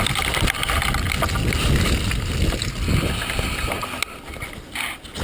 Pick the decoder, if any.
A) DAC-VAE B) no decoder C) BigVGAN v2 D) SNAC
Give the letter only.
B